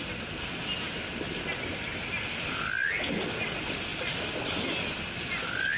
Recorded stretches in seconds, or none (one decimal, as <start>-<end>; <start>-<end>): 0.0-5.8